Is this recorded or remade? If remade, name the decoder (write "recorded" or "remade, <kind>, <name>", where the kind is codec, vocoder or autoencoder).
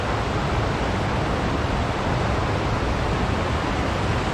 recorded